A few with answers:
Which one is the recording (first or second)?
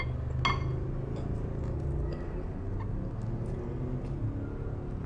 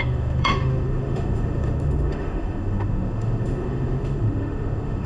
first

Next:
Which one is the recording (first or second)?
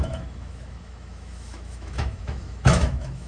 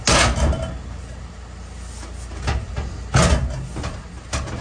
second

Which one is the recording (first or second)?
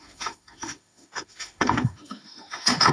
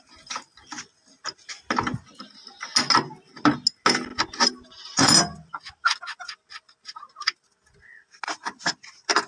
second